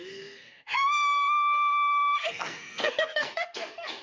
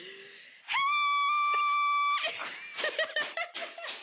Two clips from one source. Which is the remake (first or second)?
first